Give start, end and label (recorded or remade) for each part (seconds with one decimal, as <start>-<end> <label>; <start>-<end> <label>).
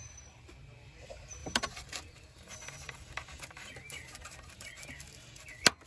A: 0.0-1.4 recorded; 1.4-4.9 remade; 4.9-5.9 recorded